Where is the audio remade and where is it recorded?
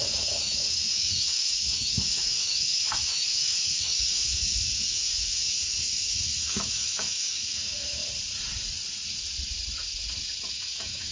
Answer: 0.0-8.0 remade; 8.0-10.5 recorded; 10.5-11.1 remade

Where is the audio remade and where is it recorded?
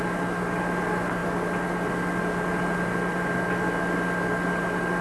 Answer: 0.0-5.0 recorded